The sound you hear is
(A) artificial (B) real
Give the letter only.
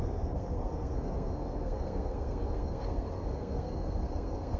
A